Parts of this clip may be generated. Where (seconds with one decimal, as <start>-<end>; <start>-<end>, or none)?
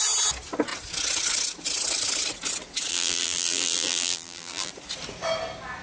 2.9-4.7